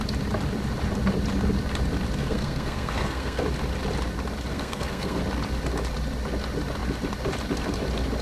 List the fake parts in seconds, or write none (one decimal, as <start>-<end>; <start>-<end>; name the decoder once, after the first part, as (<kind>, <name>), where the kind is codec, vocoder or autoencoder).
2.2-3.4 (codec, SNAC); 4.5-5.2